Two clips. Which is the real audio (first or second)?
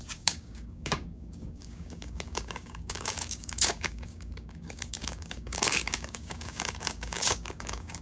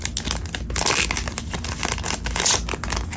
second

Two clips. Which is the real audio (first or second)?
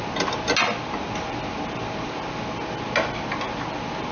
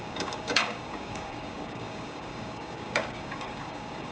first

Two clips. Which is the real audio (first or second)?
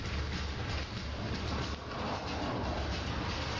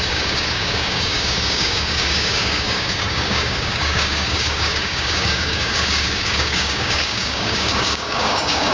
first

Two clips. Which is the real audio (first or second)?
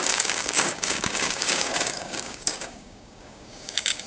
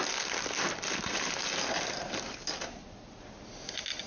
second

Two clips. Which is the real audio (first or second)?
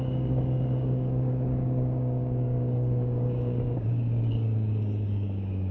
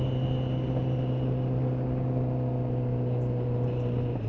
second